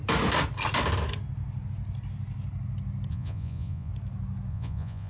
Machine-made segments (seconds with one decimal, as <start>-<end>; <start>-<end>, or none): 3.1-3.9; 4.5-5.1